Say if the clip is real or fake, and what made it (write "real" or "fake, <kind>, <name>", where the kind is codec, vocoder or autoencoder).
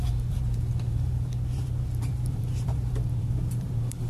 fake, vocoder, BigVGAN v2